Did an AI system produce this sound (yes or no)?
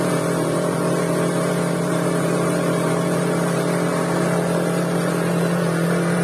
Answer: yes